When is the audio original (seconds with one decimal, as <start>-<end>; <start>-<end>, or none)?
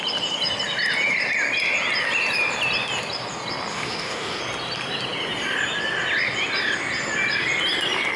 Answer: 0.0-3.7; 4.4-8.2